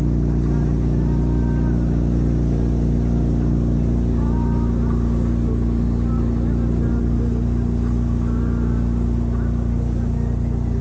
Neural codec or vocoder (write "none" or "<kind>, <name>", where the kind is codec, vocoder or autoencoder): none